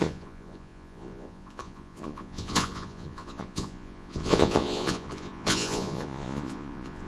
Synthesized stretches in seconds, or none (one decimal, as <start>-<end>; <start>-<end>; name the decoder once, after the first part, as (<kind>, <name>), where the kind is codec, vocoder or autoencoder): 0.0-7.1 (vocoder, Vocos)